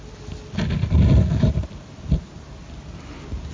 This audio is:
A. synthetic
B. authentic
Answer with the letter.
B